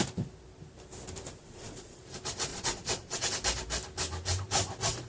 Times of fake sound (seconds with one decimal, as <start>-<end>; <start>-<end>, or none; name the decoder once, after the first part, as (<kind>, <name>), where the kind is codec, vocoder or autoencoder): 1.4-2.0 (vocoder, Vocos); 2.5-3.3